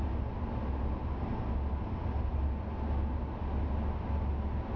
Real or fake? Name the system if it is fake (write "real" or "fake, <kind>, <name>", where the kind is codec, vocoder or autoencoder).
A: real